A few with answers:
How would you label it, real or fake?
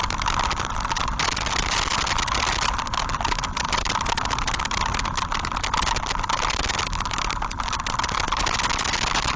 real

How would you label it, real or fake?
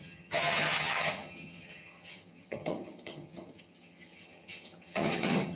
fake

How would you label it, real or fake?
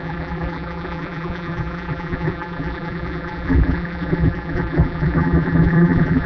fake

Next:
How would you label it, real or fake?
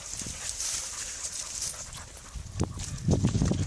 fake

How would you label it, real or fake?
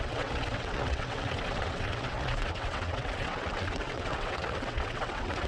fake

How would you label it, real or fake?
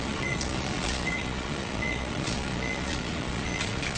fake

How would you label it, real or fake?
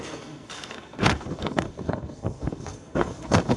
fake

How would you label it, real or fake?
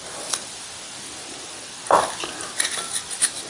real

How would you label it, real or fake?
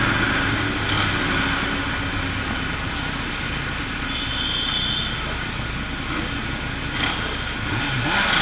real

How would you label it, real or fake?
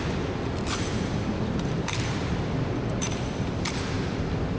fake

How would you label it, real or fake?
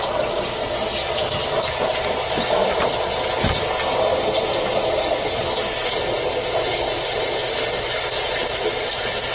real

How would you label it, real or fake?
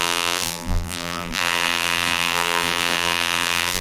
fake